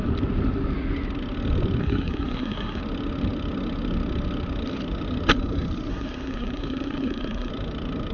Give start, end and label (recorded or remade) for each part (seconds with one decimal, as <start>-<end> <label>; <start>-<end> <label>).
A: 0.0-1.8 recorded; 1.8-2.8 remade; 2.8-5.9 recorded; 5.9-7.5 remade; 7.5-8.1 recorded